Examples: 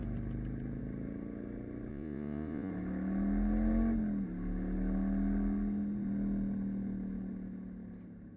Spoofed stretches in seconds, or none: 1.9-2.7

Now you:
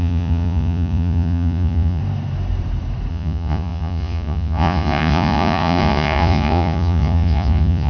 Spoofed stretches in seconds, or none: 0.0-2.0; 3.1-7.9

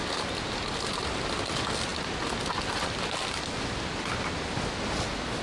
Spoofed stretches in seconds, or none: none

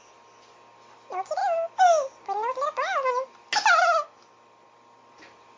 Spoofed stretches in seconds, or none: none